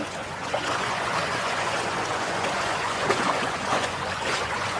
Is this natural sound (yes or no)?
no